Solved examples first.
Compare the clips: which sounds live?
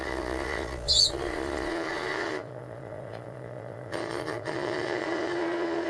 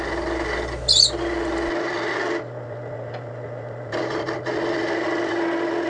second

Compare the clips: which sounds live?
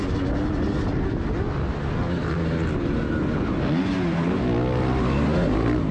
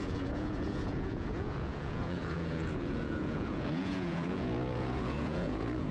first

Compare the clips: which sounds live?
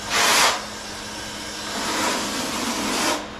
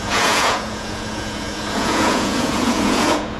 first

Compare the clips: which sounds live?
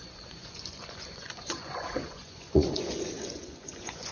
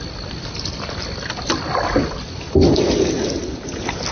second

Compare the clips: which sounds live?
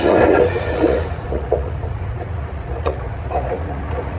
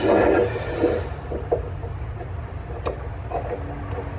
second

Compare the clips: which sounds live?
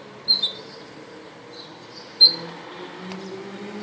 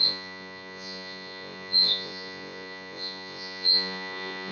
first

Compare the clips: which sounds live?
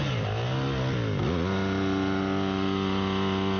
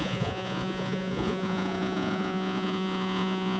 first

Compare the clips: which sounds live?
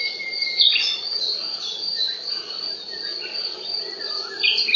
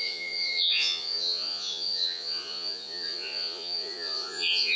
first